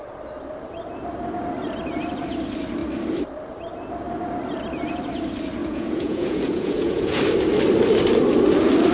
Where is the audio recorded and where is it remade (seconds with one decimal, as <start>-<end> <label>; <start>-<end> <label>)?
0.0-5.6 recorded; 5.6-7.2 remade; 7.2-8.9 recorded